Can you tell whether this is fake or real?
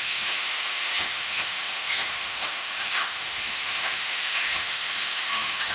fake